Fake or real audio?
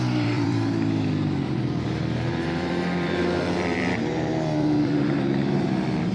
fake